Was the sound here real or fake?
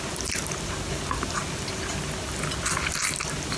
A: real